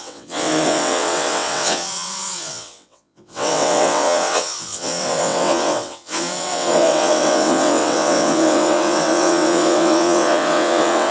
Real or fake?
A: fake